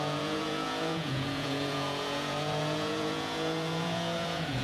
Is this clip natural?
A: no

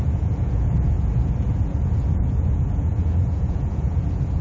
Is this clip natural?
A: no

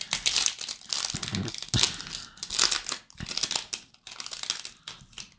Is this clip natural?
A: yes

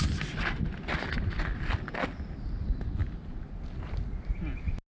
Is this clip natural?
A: yes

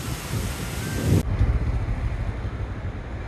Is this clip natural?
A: yes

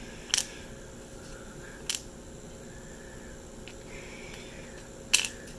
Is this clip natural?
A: yes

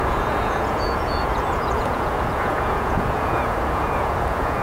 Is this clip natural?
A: no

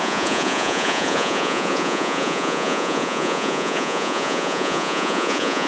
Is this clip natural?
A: no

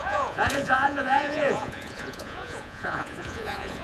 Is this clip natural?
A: no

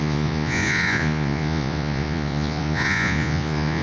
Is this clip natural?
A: no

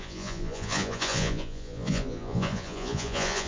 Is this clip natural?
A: no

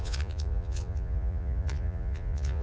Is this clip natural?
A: no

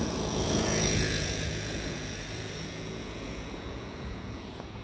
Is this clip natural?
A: no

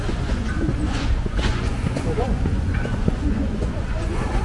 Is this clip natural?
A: no